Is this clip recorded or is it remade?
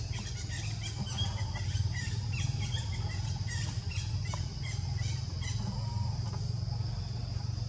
recorded